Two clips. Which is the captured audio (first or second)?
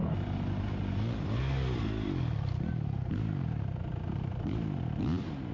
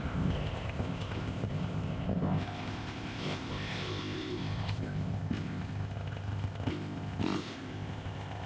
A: first